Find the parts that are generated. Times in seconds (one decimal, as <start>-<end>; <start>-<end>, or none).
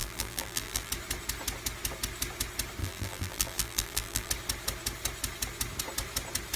0.0-0.9; 2.8-4.3